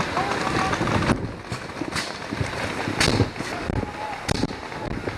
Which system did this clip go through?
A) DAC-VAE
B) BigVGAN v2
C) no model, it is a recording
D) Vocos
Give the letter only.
C